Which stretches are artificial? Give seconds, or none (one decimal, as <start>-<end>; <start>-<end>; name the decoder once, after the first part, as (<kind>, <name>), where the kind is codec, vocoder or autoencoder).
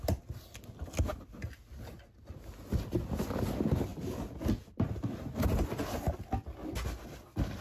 none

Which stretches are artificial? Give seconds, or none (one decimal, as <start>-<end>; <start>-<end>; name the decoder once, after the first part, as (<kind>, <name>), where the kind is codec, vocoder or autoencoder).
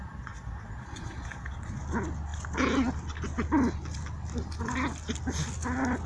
0.0-1.8 (vocoder, Vocos)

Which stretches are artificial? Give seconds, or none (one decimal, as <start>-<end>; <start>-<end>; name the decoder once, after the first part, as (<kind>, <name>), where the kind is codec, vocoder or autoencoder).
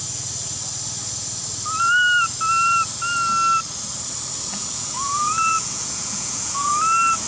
4.5-6.7 (vocoder, Vocos)